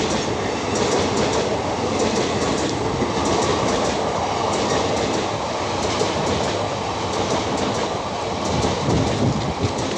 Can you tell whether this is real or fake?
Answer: real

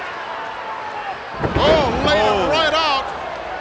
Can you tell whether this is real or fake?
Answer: real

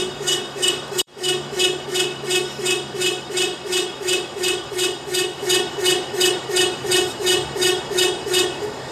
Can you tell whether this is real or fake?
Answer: fake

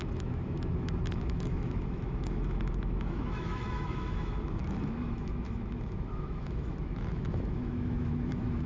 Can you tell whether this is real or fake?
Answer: fake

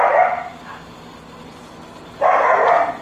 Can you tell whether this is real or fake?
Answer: real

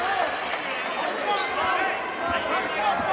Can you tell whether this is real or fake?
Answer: real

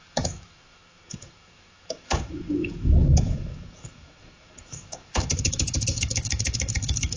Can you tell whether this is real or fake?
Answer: fake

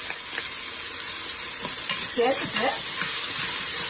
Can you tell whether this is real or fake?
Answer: real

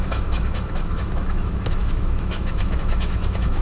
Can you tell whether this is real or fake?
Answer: fake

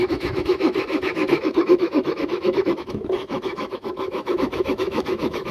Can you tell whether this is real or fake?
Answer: fake